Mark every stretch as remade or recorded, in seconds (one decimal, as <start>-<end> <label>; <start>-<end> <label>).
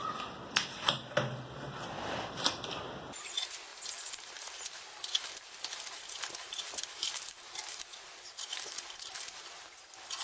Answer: 0.0-10.2 recorded